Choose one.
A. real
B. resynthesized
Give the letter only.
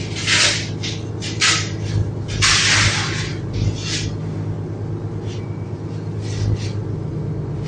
A